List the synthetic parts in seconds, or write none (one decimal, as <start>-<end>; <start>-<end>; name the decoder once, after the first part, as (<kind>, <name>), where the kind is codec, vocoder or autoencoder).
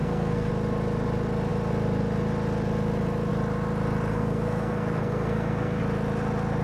0.0-0.5 (codec, SNAC); 4.1-5.8